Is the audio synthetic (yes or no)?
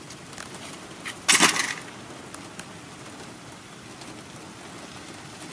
no